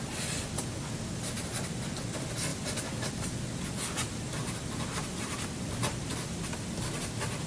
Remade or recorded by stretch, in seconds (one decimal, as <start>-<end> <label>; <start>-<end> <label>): 0.0-7.5 recorded

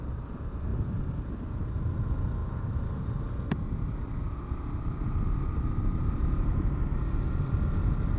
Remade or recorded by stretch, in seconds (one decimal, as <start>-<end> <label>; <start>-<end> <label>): 0.0-8.2 recorded

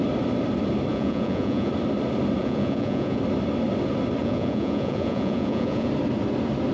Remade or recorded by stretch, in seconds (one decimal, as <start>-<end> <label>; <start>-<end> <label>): 0.0-0.9 recorded; 0.9-1.7 remade; 1.7-2.4 recorded; 2.4-3.2 remade; 3.2-4.2 recorded; 4.2-5.9 remade; 5.9-6.7 recorded

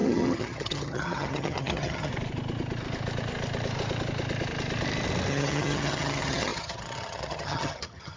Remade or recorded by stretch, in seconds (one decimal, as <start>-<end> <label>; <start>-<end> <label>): 0.0-2.1 remade; 2.1-5.3 recorded; 5.3-8.2 remade

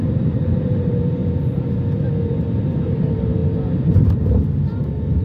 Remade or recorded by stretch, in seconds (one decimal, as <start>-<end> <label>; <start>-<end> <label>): 0.0-1.2 remade; 1.2-2.7 recorded; 2.7-3.4 remade; 3.4-5.2 recorded

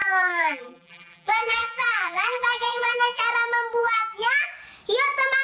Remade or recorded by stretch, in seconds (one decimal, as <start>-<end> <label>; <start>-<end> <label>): 0.0-3.2 remade; 3.2-3.8 recorded; 3.8-4.5 remade; 4.5-5.4 recorded

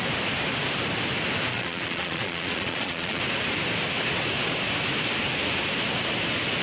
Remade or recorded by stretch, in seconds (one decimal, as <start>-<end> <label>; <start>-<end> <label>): 0.0-1.5 recorded; 1.5-3.2 remade; 3.2-6.6 recorded

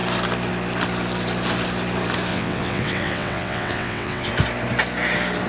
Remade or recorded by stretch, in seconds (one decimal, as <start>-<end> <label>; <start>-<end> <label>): 0.0-2.3 recorded; 2.3-4.3 remade; 4.3-5.5 recorded